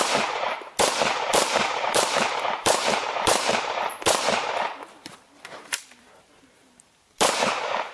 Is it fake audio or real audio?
fake